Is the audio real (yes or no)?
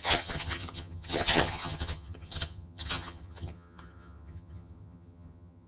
no